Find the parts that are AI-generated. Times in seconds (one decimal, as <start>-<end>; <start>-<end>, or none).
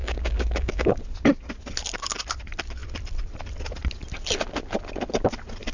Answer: 0.0-1.0